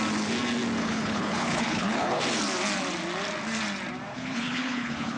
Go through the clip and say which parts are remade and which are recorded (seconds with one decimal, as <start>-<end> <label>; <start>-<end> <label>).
0.0-0.8 recorded; 0.8-2.2 remade; 2.2-4.1 recorded; 4.1-5.2 remade